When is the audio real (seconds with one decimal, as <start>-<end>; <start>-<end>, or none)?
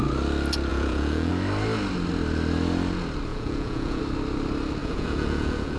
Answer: 0.0-0.7; 1.3-3.3; 4.0-4.8